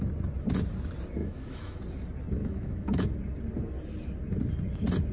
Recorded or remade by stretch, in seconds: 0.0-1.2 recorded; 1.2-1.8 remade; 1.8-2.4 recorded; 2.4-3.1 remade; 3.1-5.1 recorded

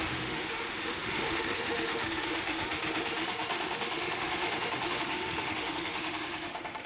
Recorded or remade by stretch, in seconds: 0.0-6.9 remade

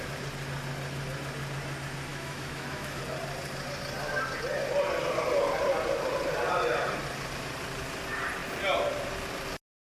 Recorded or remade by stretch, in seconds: 0.0-2.1 recorded; 2.1-3.0 remade; 3.0-9.8 recorded

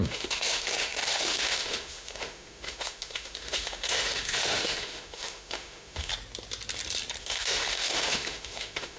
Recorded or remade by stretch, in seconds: 0.0-6.1 remade; 6.1-7.2 recorded; 7.2-9.0 remade

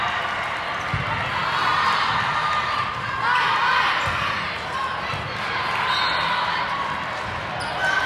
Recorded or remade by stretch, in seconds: 0.0-8.1 recorded

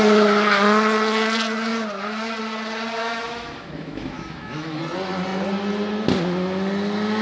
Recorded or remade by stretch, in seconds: 0.0-3.0 recorded; 3.0-4.8 remade; 4.8-7.2 recorded